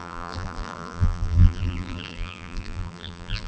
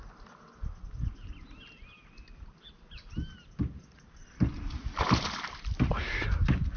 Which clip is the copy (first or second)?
first